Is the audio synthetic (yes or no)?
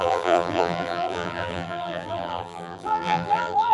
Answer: yes